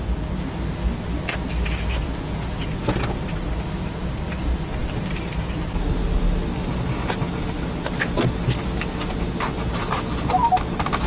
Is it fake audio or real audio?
real